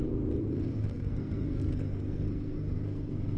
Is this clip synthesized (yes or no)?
yes